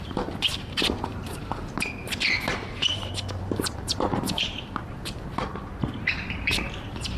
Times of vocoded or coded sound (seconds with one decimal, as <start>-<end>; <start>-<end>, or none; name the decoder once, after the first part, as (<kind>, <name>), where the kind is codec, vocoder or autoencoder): 0.0-1.4 (vocoder, BigVGAN v2); 3.4-5.5; 6.1-7.2